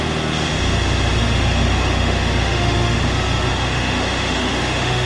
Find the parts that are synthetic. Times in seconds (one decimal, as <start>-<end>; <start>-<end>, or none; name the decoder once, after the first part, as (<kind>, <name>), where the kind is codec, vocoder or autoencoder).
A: 1.2-3.0 (autoencoder, DAC-VAE); 3.5-5.1